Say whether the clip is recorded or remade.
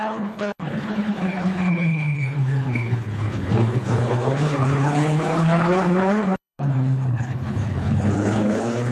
remade